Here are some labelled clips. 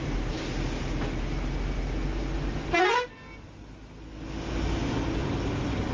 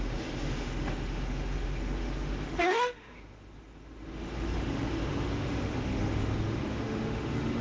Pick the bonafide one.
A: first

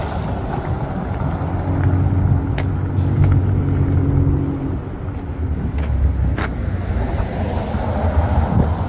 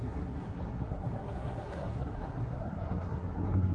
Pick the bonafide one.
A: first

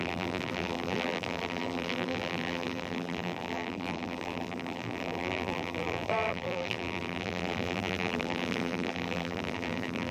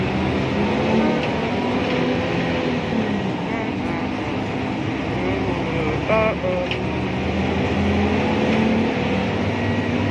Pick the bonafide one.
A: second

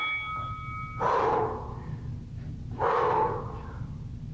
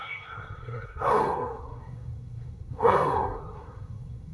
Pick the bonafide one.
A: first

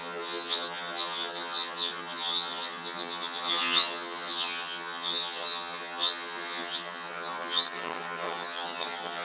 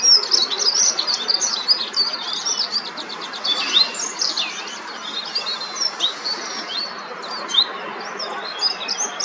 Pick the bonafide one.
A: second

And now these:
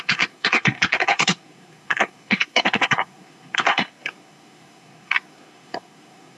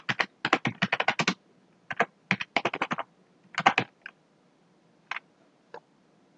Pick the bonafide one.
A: second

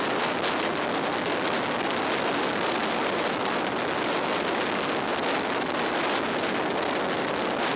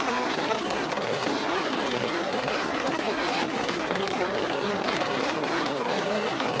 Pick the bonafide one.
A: first